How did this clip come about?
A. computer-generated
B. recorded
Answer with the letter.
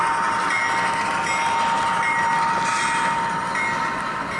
B